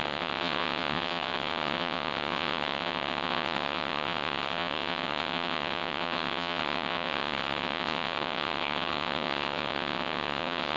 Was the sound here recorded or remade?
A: remade